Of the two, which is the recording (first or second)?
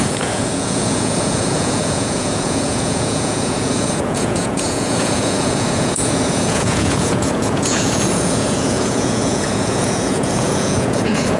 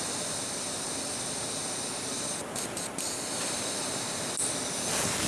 second